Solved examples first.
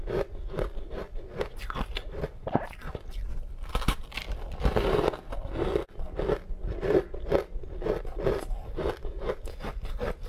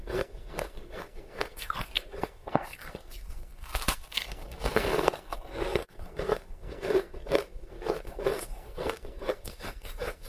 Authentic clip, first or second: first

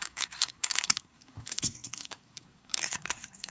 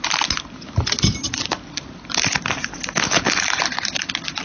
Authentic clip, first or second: second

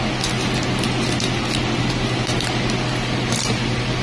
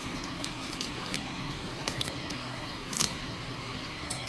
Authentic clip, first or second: first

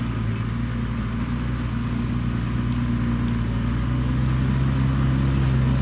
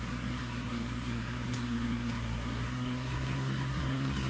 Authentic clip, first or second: first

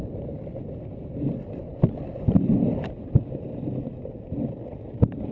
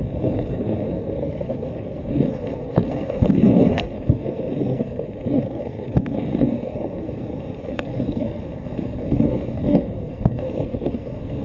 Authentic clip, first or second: first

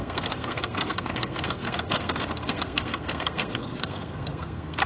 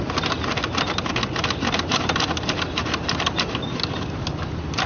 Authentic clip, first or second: second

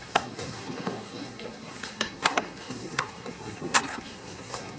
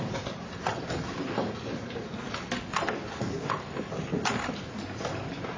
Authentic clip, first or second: second